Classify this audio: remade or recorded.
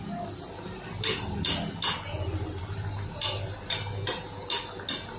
recorded